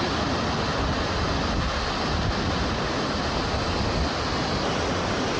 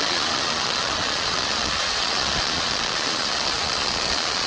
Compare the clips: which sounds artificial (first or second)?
second